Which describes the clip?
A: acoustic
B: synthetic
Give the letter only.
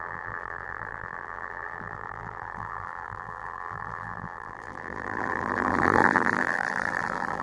B